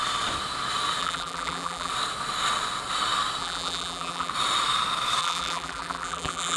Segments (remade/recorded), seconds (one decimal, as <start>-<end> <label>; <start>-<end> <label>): 0.0-1.0 recorded; 1.0-1.9 remade; 1.9-3.4 recorded; 3.4-4.3 remade; 4.3-5.2 recorded; 5.2-6.6 remade